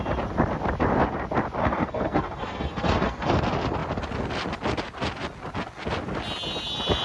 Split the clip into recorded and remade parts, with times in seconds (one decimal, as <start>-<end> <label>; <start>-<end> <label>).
0.0-1.6 recorded; 1.6-3.4 remade; 3.4-7.0 recorded